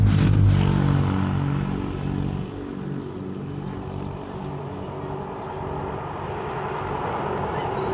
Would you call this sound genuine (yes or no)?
yes